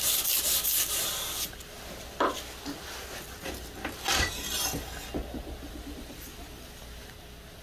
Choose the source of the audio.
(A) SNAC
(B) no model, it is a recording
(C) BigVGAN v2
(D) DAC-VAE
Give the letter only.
B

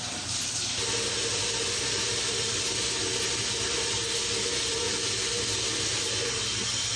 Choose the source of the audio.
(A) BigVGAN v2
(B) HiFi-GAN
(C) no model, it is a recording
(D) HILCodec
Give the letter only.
C